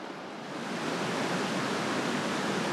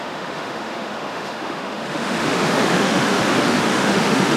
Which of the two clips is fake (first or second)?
second